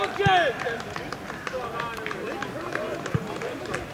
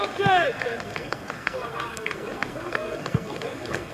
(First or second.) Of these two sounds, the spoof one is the second